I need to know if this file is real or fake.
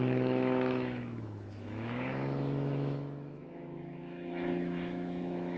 fake